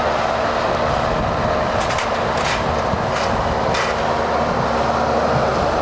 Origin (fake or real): real